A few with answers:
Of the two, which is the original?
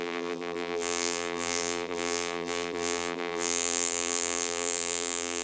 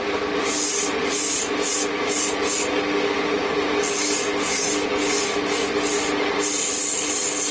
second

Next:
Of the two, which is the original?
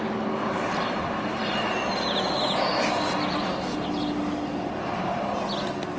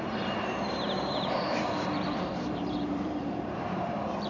first